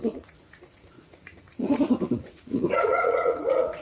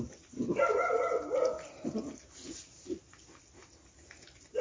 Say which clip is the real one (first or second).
second